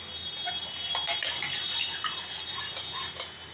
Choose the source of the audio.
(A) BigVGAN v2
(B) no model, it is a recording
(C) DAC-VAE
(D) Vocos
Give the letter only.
B